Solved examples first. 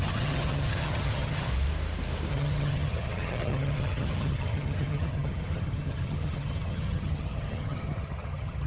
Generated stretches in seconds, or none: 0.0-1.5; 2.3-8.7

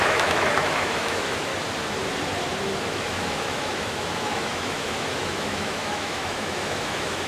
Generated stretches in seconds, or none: 0.0-1.5; 2.8-7.3